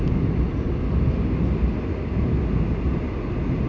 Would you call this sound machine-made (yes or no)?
no